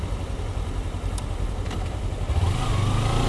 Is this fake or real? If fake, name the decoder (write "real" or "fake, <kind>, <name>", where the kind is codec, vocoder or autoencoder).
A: real